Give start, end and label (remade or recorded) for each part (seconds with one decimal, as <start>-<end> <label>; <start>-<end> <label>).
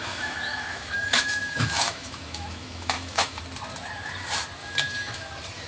0.0-3.4 remade; 3.4-4.6 recorded; 4.6-5.3 remade; 5.3-5.7 recorded